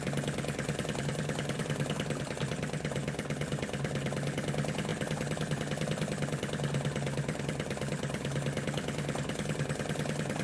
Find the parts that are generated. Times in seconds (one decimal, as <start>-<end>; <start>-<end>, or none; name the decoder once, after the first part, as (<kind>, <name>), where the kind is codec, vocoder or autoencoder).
none